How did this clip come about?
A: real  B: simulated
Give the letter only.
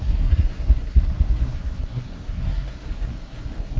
B